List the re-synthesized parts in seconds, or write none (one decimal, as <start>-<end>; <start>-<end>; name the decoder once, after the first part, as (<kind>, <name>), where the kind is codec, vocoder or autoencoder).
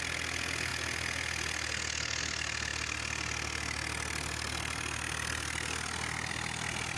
none